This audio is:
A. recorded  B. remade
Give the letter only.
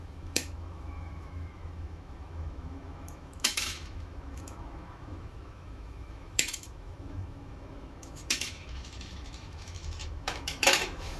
B